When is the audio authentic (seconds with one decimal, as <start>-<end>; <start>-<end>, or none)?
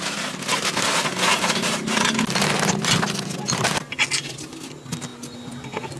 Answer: 0.0-6.0